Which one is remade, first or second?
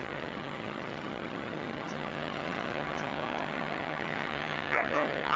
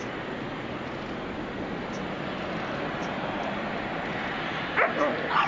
first